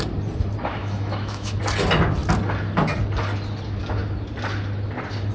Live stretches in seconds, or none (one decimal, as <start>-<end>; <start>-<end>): 0.0-0.8; 1.6-5.3